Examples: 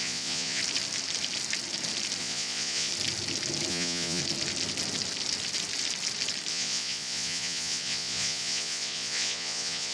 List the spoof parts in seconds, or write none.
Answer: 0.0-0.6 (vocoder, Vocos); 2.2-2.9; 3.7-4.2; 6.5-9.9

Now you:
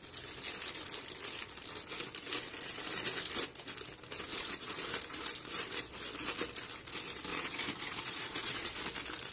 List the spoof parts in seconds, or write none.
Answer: 4.3-4.9 (vocoder, Vocos); 7.3-8.8

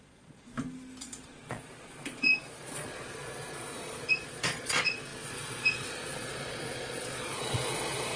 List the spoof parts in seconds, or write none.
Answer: 0.0-0.5 (vocoder, Vocos); 1.0-8.2

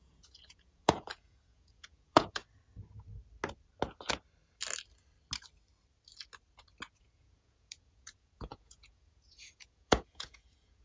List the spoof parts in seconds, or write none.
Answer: 0.0-2.4 (vocoder, Vocos); 7.0-10.8

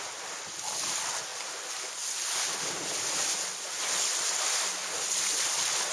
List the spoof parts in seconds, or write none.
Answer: none

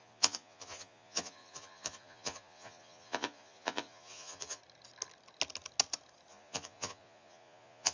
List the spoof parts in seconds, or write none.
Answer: 0.0-4.6 (vocoder, Vocos); 6.3-7.9

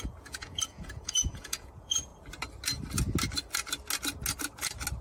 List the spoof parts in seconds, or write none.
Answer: 0.0-2.1 (vocoder, Vocos)